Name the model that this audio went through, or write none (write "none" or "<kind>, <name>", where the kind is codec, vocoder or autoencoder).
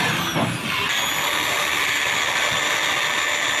none